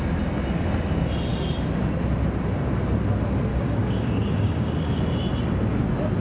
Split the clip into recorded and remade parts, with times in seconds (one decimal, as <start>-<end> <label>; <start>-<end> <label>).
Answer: 0.0-3.5 recorded; 3.5-5.0 remade; 5.0-6.2 recorded